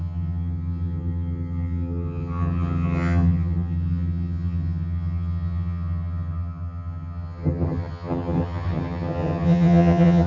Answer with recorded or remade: remade